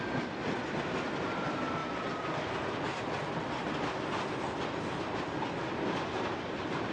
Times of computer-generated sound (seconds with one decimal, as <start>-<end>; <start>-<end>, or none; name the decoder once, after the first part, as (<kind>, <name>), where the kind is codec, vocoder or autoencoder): 0.0-0.4 (vocoder, BigVGAN v2); 1.0-1.8; 4.6-6.9